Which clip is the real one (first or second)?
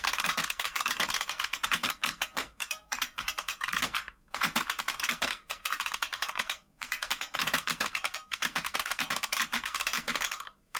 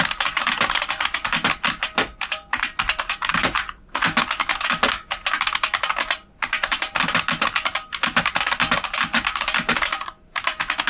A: second